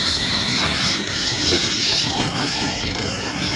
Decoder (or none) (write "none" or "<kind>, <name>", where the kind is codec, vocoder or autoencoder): codec, SNAC